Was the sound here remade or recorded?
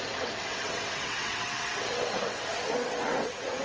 remade